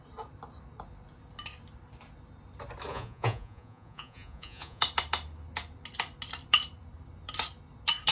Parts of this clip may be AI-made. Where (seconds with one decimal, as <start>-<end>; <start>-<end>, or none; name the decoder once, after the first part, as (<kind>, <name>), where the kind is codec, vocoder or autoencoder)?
2.9-4.8 (vocoder, Vocos)